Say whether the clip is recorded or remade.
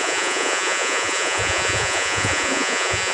remade